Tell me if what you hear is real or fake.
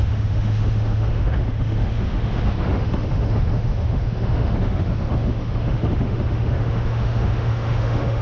fake